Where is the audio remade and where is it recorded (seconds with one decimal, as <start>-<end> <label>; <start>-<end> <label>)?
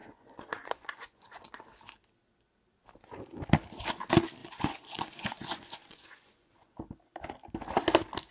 0.0-1.4 remade; 1.4-4.4 recorded; 4.4-6.8 remade; 6.8-8.3 recorded